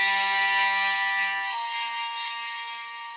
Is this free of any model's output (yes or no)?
no